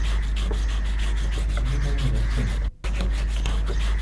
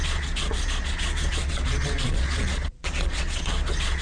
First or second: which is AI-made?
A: second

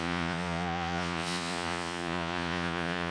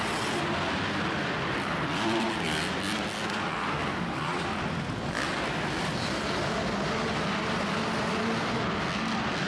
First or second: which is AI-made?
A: first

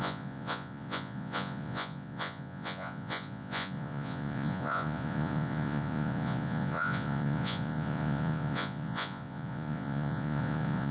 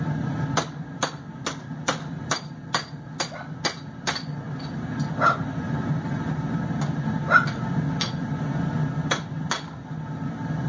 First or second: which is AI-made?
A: first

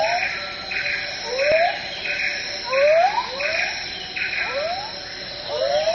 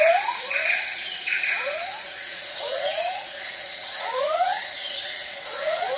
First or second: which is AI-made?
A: second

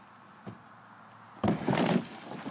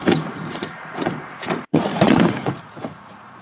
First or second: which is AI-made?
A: second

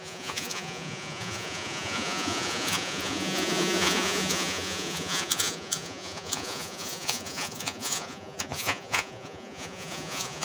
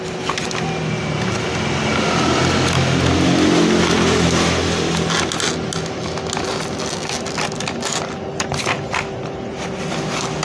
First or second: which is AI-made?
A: first